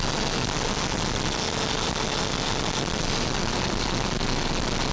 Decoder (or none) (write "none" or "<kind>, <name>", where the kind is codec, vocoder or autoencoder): none